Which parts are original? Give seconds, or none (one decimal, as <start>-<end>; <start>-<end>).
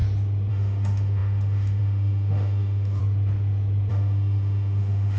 0.0-0.5; 3.0-3.9